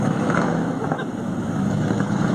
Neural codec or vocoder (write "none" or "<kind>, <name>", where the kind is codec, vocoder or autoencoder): autoencoder, DAC-VAE